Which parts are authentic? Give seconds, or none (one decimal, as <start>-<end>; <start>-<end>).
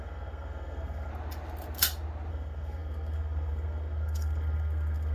1.1-2.3